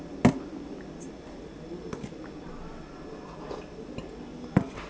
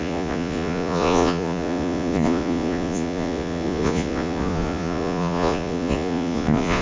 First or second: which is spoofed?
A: second